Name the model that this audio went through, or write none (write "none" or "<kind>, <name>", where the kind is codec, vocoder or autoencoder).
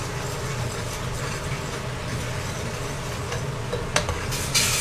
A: none